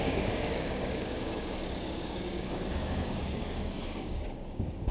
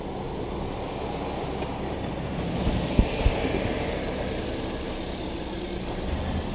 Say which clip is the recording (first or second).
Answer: second